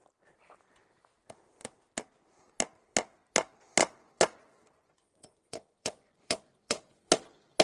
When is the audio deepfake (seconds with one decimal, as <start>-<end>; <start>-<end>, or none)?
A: 3.8-7.0